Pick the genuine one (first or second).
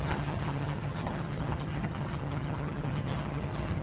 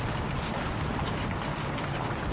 second